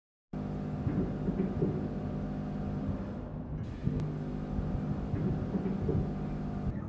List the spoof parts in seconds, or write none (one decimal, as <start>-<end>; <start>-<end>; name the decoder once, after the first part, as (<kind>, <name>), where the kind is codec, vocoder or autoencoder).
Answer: none